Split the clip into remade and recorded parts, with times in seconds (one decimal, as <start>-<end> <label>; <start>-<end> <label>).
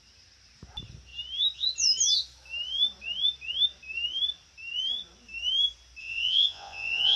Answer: 0.0-6.0 recorded; 6.0-7.2 remade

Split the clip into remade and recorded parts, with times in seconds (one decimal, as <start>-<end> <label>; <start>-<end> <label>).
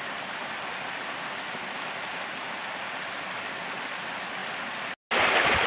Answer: 0.0-5.7 recorded